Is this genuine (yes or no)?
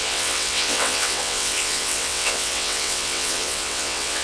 no